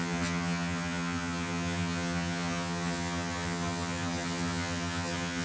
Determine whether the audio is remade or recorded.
remade